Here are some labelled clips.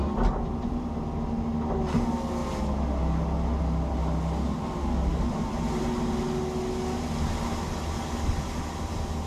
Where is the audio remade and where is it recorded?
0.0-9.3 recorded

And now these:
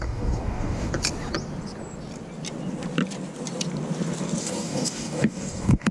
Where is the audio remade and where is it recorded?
0.0-0.9 remade; 0.9-4.4 recorded; 4.4-5.9 remade